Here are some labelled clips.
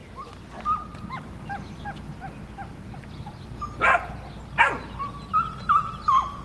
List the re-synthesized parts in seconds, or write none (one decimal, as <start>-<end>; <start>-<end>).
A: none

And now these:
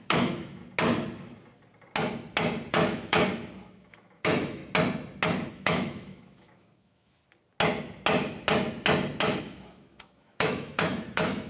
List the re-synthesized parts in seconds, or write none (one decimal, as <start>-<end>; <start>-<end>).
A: 0.0-0.6; 2.7-3.3; 3.8-4.6; 5.5-7.2; 9.4-11.5

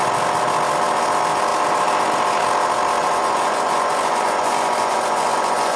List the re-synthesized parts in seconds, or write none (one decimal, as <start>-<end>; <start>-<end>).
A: 3.0-5.8